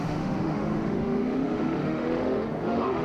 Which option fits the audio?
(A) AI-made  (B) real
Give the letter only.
A